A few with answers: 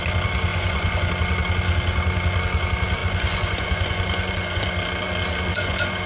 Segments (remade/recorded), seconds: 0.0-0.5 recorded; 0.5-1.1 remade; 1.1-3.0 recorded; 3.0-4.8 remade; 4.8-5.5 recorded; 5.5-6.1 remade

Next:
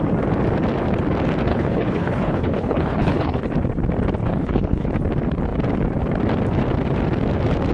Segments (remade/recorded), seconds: 0.0-1.5 recorded; 1.5-3.4 remade; 3.4-4.2 recorded; 4.2-4.9 remade; 4.9-7.7 recorded

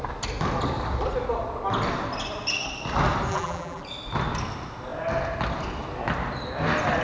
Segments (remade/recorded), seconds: 0.0-3.3 recorded; 3.3-3.8 remade; 3.8-7.0 recorded